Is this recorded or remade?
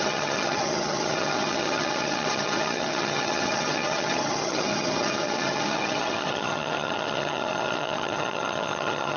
remade